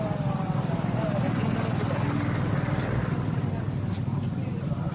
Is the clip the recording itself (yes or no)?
yes